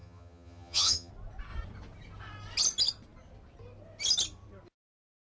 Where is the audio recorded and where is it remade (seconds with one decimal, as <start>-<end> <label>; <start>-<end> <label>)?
0.0-1.1 remade; 1.1-5.4 recorded